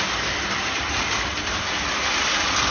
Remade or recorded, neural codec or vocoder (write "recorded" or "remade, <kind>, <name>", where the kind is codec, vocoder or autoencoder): remade, vocoder, BigVGAN v2